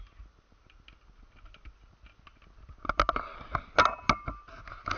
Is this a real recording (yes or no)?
yes